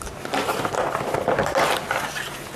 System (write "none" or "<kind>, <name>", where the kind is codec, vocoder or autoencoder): none